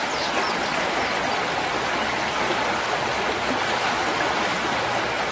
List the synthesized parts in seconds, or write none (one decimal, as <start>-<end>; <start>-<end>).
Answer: none